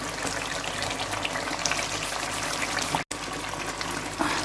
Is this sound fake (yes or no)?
no